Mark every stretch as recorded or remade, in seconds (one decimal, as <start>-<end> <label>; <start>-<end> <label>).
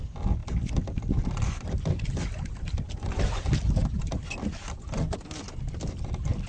0.0-6.5 recorded